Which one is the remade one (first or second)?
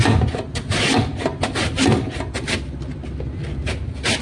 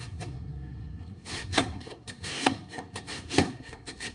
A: second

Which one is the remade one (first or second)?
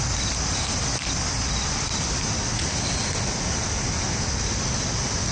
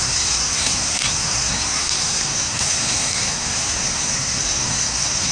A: second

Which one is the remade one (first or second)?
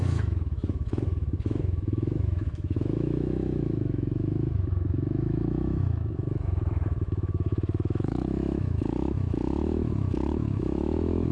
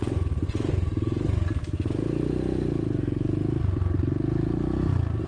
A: first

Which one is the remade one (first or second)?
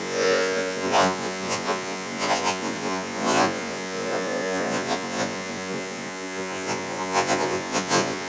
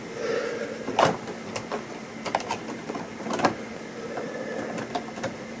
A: first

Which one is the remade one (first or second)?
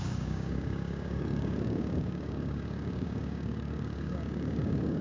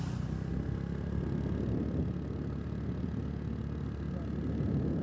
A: first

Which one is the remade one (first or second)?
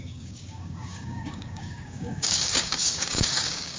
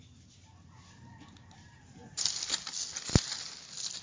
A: first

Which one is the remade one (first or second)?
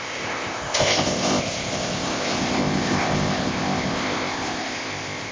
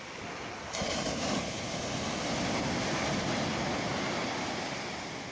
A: first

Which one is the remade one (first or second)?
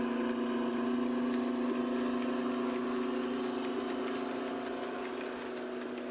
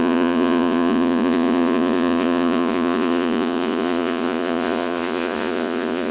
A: second